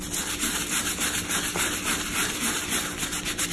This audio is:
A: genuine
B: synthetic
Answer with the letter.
A